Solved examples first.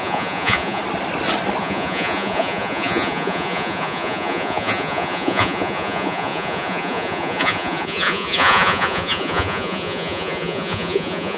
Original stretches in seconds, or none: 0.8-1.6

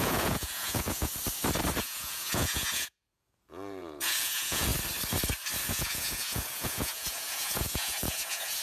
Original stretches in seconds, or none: 1.1-1.8; 4.7-5.7

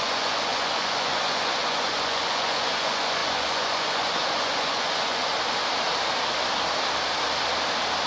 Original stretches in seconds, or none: 5.3-8.1

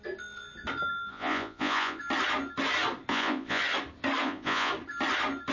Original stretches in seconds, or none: 0.0-1.1; 2.0-3.1; 3.6-4.2; 4.7-5.5

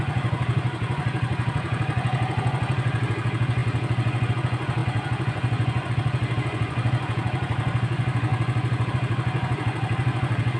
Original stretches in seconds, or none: none

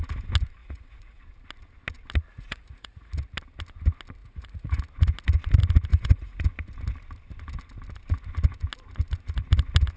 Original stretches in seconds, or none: 0.0-0.6; 1.2-2.3; 3.2-4.2; 4.8-5.9; 6.4-10.0